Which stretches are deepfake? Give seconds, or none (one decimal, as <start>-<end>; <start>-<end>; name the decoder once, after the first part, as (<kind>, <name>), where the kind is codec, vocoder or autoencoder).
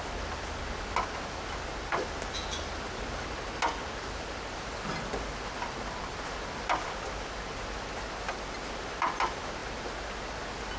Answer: none